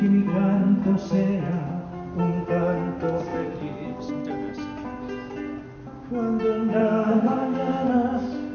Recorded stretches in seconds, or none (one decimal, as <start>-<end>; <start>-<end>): 0.0-6.8; 7.9-8.5